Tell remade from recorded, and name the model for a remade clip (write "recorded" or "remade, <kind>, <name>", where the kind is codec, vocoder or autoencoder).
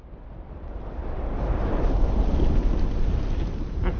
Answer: recorded